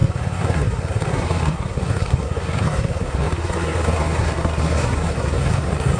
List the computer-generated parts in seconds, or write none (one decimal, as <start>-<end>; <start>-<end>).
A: 0.0-6.0